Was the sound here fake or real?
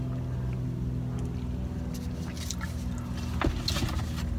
real